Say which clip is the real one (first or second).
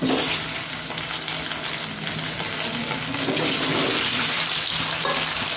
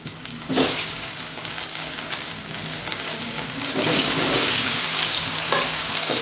first